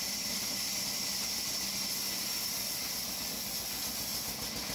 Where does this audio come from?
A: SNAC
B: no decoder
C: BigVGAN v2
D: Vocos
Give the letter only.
B